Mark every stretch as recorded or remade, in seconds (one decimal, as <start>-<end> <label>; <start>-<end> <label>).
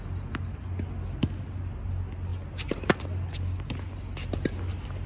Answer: 0.0-5.1 recorded